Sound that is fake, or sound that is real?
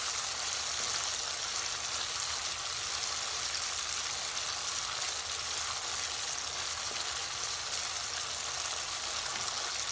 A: real